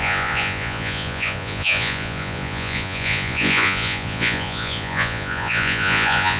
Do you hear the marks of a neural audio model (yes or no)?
yes